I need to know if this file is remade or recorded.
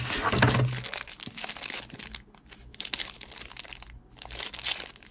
recorded